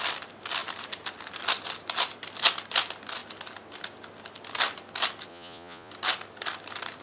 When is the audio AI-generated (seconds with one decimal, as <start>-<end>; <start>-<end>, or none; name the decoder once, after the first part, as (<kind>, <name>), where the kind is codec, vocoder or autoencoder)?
5.3-5.9 (vocoder, Vocos)